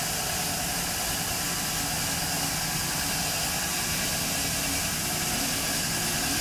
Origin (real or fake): real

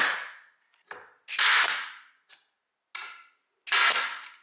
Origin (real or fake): real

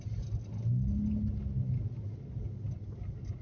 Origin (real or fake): real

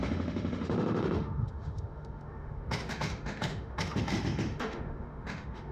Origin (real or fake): fake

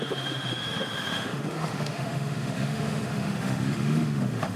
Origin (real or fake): fake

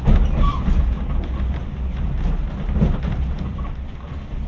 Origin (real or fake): real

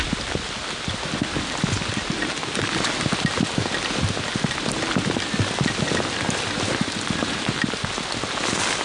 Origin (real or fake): real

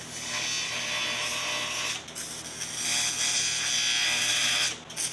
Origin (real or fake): real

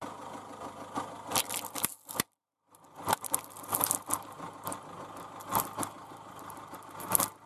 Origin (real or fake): real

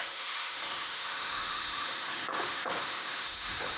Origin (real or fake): fake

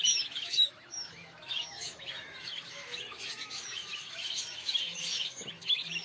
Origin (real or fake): fake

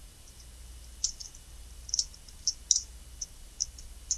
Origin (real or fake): real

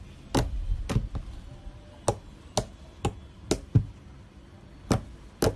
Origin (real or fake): real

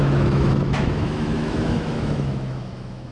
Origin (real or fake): fake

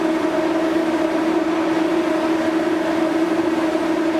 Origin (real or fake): real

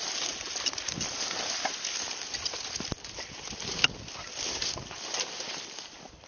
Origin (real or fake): real